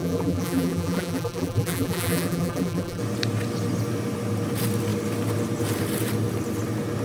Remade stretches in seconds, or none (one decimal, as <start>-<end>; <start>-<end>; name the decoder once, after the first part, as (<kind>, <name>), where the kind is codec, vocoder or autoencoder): 0.0-3.0 (vocoder, BigVGAN v2)